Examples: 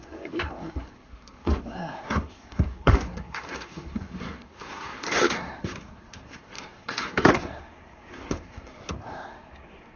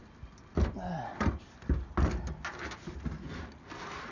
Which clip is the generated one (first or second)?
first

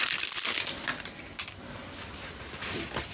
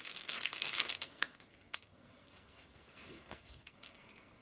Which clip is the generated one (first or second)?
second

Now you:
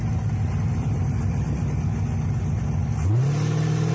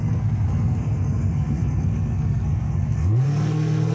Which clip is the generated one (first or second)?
second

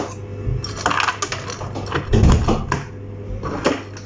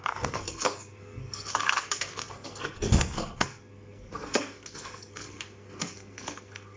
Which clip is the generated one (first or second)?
second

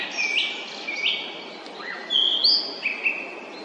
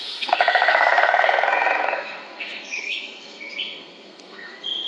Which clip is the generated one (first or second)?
second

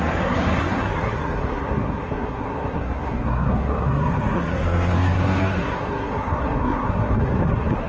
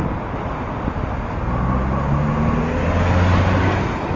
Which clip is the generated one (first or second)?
first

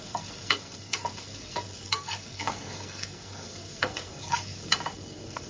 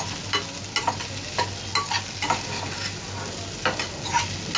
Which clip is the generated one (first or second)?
first